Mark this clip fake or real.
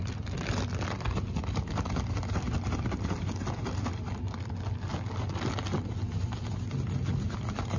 real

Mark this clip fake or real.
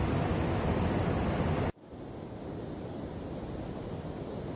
real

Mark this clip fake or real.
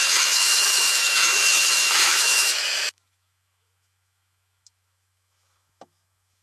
fake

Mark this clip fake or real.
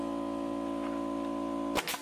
real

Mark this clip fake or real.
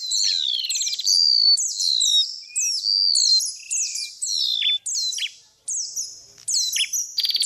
real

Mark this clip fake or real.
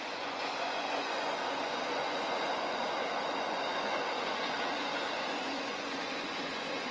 fake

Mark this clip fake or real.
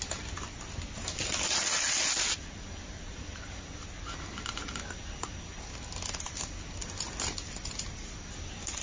real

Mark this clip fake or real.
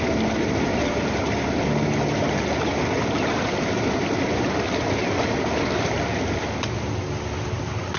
real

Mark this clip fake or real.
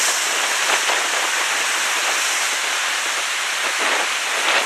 real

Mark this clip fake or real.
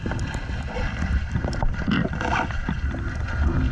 real